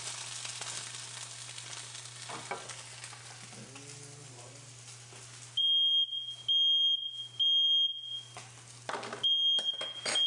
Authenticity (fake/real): real